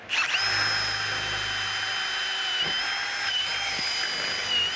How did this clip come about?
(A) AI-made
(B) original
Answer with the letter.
B